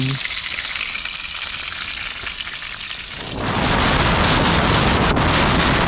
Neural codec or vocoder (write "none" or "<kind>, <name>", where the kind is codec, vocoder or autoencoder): none